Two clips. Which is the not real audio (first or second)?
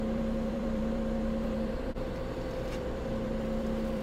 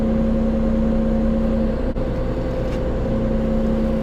first